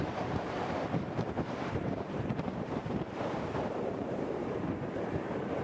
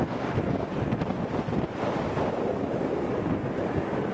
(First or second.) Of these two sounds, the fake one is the first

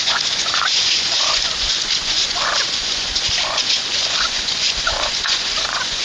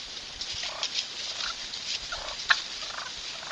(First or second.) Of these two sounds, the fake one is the first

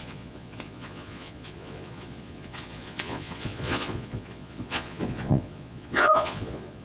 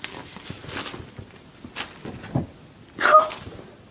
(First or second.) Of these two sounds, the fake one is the first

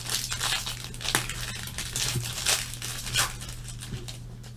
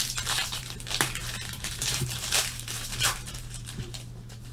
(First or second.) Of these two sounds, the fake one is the second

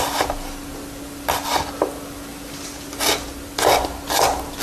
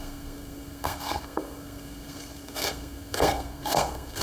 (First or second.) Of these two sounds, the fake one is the second